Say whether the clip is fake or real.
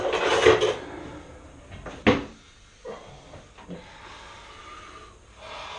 real